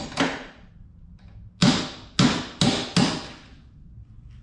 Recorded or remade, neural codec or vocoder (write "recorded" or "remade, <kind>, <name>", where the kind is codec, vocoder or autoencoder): recorded